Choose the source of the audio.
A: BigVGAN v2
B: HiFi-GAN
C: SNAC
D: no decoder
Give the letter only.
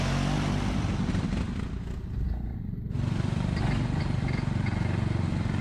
D